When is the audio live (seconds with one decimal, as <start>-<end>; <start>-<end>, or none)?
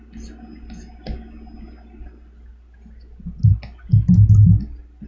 0.0-5.1